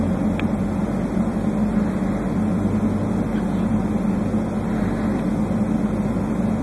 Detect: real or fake real